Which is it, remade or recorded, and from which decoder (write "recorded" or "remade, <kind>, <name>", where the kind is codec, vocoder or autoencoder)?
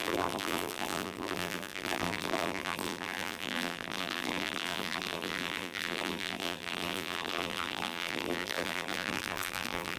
remade, vocoder, BigVGAN v2